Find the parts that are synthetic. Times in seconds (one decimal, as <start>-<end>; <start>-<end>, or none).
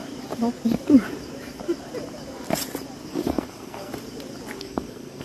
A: 3.1-3.9; 4.6-5.2